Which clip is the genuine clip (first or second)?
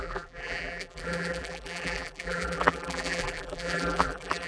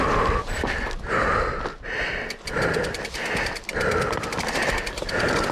second